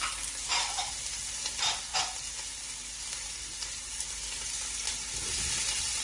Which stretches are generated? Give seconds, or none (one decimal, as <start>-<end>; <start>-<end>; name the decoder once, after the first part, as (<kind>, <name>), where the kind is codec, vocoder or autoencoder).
none